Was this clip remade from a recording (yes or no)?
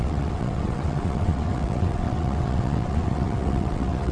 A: yes